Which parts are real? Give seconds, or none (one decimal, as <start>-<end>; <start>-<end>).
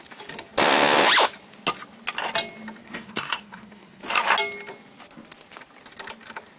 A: 0.0-2.8; 4.0-6.6